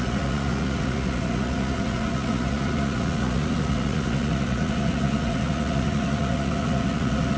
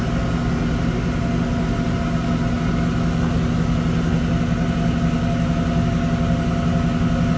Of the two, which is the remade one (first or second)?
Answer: first